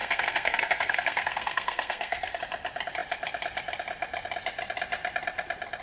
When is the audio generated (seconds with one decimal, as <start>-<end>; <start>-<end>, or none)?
0.0-2.4